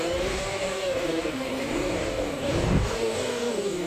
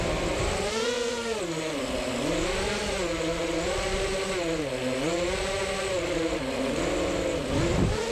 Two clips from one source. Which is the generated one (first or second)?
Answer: first